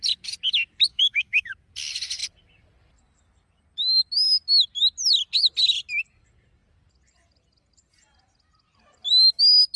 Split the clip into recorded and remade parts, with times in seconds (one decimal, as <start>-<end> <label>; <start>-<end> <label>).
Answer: 0.0-0.9 recorded; 0.9-1.5 remade; 1.5-9.8 recorded